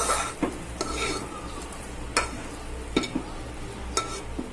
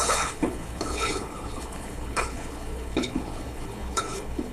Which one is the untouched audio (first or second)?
first